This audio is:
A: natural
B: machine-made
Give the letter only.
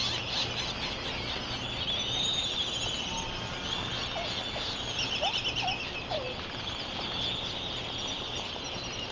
A